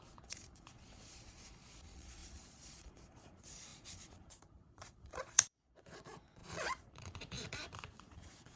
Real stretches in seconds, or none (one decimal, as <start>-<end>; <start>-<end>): none